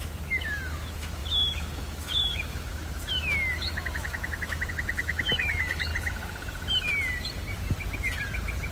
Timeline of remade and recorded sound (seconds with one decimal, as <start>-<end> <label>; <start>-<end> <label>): 0.0-5.9 remade; 5.9-8.7 recorded